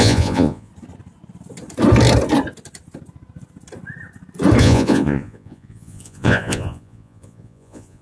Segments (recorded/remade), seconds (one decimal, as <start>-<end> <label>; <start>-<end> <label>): 0.0-0.7 remade; 0.7-4.6 recorded; 4.6-8.0 remade